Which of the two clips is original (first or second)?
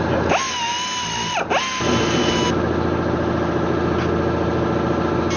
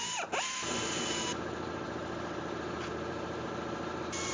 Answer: first